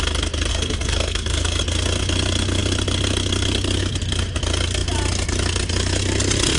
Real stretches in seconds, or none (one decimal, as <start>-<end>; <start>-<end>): 0.0-0.5; 1.6-6.6